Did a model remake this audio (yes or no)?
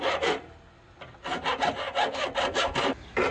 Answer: no